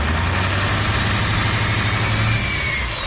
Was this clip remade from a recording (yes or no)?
no